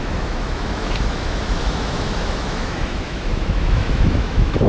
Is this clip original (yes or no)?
no